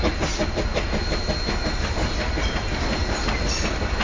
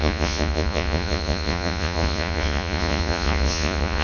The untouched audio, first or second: first